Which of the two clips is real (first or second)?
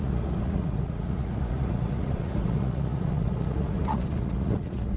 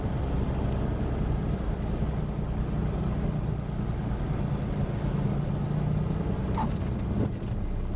second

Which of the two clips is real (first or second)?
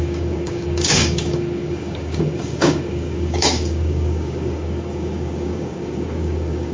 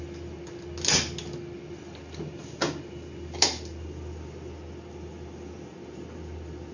second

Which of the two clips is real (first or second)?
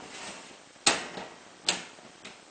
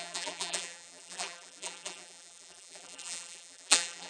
first